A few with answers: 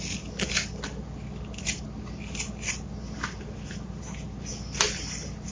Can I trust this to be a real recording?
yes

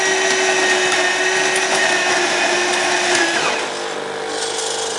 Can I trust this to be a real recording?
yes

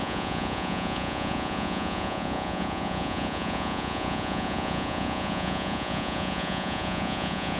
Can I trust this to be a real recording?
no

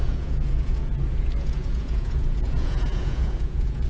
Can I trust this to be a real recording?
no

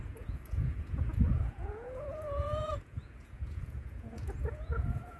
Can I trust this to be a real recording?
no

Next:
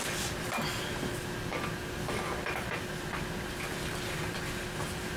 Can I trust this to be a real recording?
yes